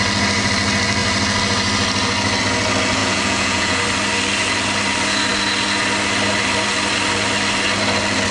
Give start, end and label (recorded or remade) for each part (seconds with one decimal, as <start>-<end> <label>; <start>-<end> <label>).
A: 0.0-3.0 recorded; 3.0-3.8 remade; 3.8-8.3 recorded